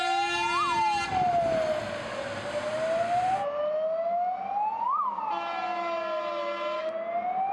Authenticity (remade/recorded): recorded